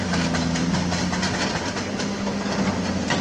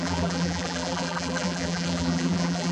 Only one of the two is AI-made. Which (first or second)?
second